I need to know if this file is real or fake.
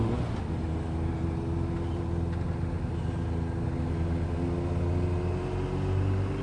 real